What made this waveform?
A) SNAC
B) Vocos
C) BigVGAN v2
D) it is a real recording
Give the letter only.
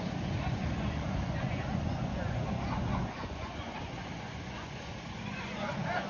B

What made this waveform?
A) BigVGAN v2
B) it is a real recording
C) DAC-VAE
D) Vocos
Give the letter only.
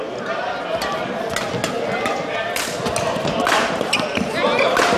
B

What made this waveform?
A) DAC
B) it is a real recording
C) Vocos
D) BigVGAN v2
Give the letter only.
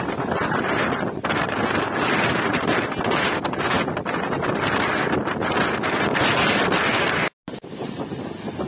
B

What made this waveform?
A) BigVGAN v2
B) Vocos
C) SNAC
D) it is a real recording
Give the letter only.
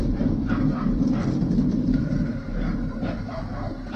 A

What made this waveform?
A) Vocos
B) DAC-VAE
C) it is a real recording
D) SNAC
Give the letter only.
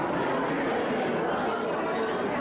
C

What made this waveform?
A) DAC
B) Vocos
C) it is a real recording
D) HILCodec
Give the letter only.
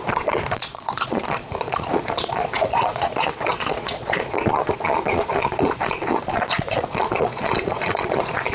B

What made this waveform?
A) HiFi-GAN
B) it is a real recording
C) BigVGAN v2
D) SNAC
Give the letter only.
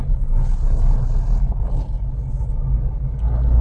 B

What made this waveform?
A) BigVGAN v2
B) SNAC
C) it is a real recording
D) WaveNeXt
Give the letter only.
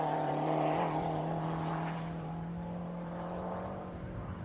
A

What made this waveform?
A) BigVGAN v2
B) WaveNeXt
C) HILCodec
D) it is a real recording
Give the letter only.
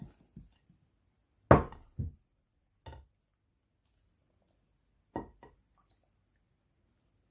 D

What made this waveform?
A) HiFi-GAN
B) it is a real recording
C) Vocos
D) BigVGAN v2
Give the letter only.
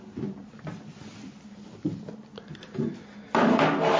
B